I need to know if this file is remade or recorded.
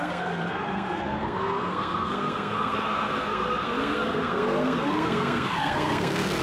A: remade